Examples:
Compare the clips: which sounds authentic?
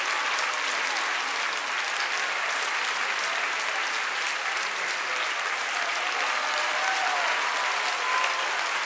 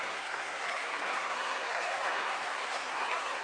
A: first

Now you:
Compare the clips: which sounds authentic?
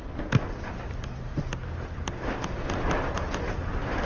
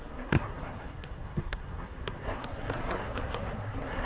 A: first